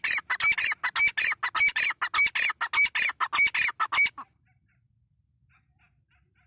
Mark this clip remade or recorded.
recorded